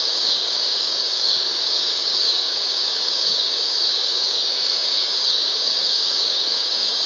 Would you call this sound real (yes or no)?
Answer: no